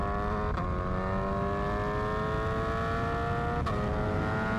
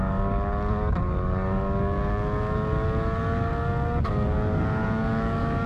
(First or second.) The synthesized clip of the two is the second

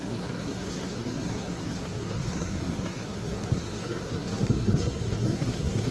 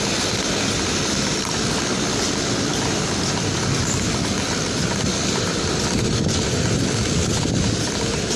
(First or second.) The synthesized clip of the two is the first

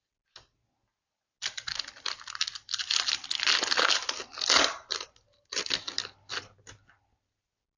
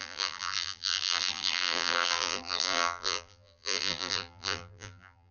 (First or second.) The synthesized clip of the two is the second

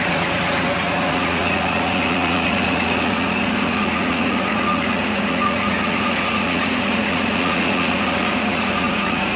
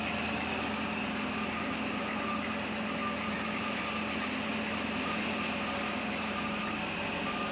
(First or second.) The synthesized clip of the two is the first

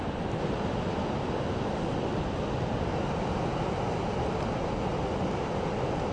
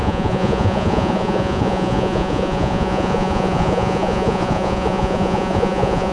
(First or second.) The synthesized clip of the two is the second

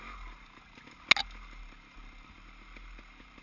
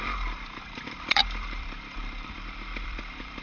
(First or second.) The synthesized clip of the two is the second